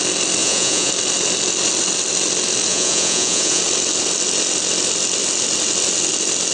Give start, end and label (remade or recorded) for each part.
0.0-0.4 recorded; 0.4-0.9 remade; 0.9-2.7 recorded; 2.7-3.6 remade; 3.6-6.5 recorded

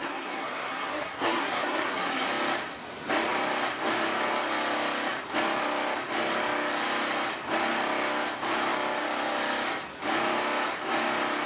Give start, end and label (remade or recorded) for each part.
0.0-2.3 remade; 2.3-11.5 recorded

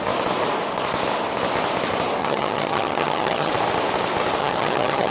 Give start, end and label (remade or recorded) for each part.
0.0-2.2 recorded; 2.2-3.5 remade; 3.5-4.4 recorded; 4.4-5.1 remade

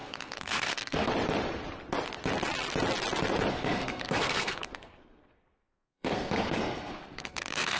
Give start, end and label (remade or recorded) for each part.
0.0-1.1 remade; 1.1-3.5 recorded; 3.5-7.8 remade